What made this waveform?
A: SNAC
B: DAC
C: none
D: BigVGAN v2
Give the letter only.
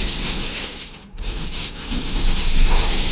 A